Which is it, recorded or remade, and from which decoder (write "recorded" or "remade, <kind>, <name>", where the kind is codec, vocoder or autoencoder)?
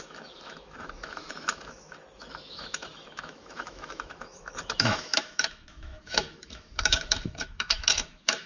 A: remade, autoencoder, DAC-VAE